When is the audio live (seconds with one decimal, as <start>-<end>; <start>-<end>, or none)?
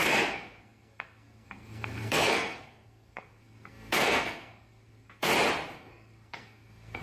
5.3-5.8